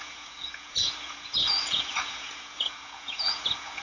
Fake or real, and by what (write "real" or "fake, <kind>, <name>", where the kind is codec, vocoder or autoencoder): fake, vocoder, Vocos